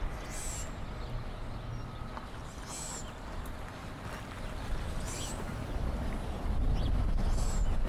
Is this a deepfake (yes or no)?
no